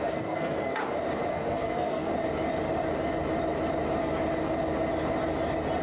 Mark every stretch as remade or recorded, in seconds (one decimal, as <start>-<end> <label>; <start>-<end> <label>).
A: 0.0-0.8 remade; 0.8-1.3 recorded; 1.3-2.1 remade; 2.1-5.8 recorded